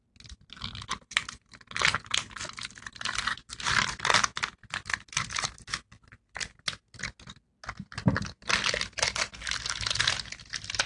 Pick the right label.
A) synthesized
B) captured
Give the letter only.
B